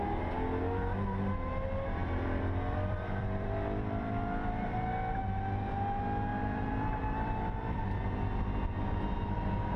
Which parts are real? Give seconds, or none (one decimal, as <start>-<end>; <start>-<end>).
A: 0.0-2.0; 4.8-6.3; 8.0-9.8